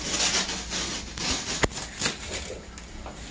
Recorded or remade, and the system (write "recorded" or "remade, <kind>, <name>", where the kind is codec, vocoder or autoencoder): recorded